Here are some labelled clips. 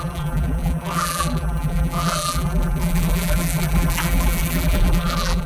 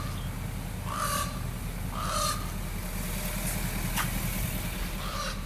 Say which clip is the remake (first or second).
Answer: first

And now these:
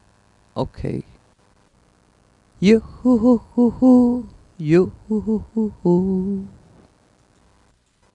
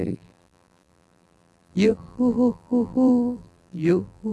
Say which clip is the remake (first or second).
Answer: second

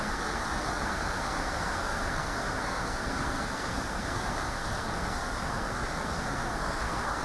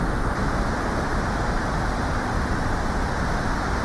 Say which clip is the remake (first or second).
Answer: first